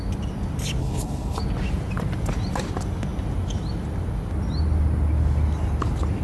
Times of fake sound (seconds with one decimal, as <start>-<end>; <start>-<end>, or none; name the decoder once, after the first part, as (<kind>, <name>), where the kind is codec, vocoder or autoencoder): 0.8-1.4 (codec, HILCodec)